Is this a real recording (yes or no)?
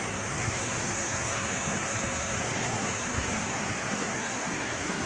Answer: no